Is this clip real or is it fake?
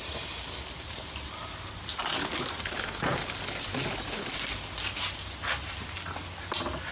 real